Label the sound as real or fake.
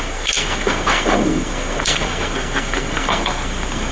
fake